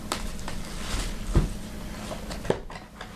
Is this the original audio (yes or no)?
yes